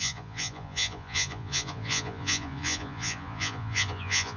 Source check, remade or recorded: remade